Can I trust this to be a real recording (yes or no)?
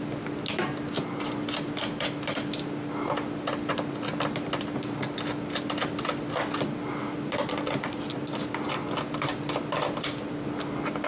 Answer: yes